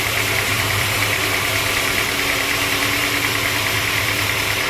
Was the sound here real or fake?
fake